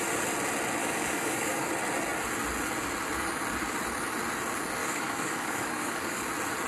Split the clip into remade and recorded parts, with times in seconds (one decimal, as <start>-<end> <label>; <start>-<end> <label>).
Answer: 0.0-0.8 recorded; 0.8-1.7 remade; 1.7-4.8 recorded; 4.8-6.2 remade; 6.2-6.7 recorded